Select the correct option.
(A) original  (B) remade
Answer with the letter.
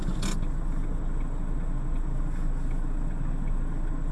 A